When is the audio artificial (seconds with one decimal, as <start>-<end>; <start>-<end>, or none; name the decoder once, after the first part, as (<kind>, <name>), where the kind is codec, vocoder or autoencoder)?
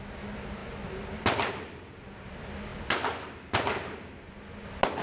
none